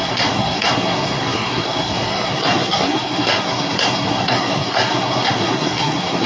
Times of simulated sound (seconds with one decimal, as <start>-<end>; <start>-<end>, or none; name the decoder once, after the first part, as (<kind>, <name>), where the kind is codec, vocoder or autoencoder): 0.0-6.3 (codec, SNAC)